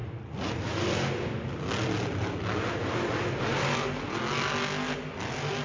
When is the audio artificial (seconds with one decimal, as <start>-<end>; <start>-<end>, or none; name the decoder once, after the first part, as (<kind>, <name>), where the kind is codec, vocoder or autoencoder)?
none